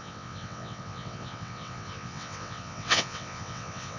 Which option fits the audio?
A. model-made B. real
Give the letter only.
A